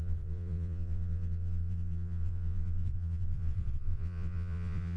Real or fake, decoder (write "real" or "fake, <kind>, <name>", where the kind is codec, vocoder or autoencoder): fake, vocoder, Vocos